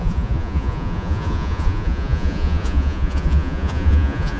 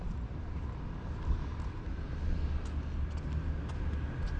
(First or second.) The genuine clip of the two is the second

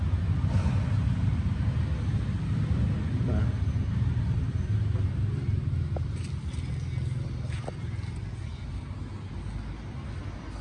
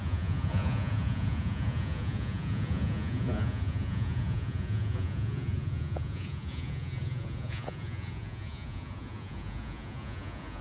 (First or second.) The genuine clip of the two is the first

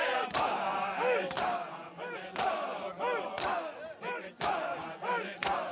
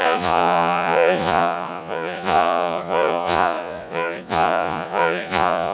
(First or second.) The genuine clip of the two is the first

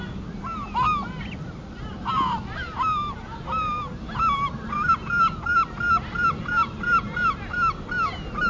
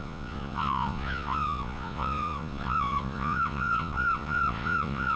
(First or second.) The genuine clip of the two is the first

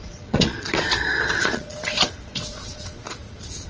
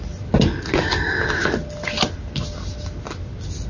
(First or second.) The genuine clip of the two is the second